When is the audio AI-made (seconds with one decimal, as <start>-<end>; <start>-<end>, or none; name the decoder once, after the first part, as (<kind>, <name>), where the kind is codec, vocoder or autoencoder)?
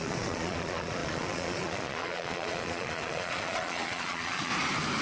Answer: 0.0-4.5 (vocoder, Vocos)